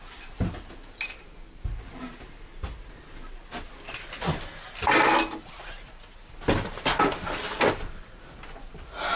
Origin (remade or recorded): recorded